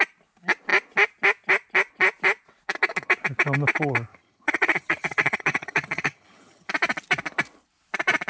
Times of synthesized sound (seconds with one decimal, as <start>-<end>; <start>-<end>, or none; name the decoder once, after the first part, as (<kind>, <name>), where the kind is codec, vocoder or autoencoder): 4.1-6.7 (vocoder, HiFi-GAN)